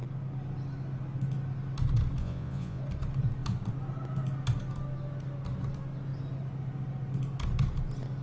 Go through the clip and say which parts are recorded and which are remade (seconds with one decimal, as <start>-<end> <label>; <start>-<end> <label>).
0.0-2.2 recorded; 2.2-2.8 remade; 2.8-8.2 recorded